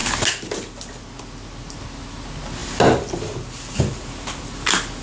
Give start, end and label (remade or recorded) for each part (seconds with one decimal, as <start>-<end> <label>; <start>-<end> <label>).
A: 0.0-5.0 recorded